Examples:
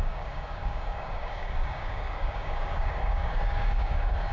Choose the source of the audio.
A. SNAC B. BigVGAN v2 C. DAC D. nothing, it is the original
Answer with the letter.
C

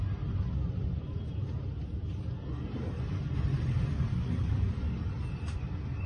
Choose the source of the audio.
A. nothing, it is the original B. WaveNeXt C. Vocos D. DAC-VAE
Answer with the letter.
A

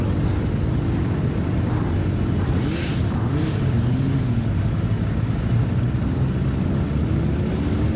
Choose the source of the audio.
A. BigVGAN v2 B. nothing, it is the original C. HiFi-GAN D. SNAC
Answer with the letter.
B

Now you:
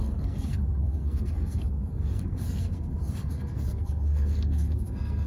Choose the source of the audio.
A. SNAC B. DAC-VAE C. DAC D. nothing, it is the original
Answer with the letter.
A